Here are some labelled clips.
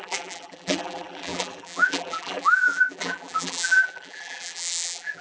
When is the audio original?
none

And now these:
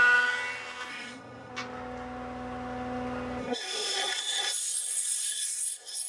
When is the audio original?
0.0-0.9; 1.5-3.4

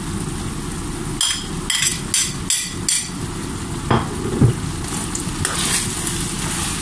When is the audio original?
0.0-6.8